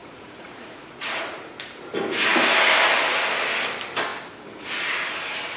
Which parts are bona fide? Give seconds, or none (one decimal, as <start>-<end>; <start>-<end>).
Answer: 1.6-5.6